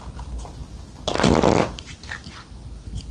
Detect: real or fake real